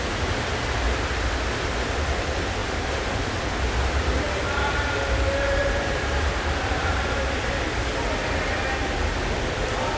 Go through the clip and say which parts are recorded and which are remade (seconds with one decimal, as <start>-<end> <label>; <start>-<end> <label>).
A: 0.0-2.6 recorded; 2.6-3.2 remade; 3.2-5.6 recorded; 5.6-7.2 remade; 7.2-10.0 recorded